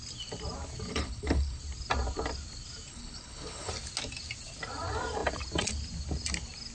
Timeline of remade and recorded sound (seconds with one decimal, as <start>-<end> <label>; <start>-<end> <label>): 0.0-0.9 recorded; 0.9-1.6 remade; 1.6-2.9 recorded; 2.9-3.7 remade; 3.7-6.7 recorded